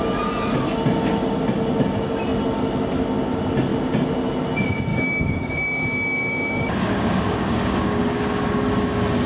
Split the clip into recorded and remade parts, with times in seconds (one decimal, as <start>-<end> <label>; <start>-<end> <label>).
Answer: 0.0-4.9 recorded; 4.9-8.8 remade; 8.8-9.3 recorded